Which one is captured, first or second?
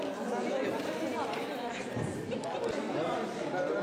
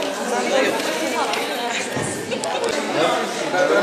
second